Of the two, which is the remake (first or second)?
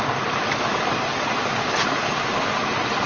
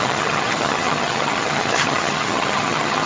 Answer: second